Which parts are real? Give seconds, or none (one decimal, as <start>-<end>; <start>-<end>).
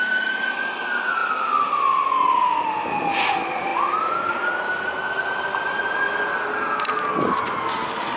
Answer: 0.0-8.2